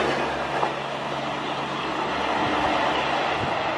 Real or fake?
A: real